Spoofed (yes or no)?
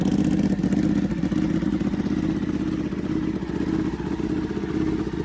no